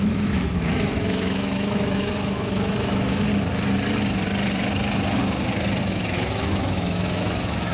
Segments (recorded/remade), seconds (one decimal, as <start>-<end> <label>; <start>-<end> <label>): 0.0-3.3 remade; 3.3-5.8 recorded; 5.8-7.7 remade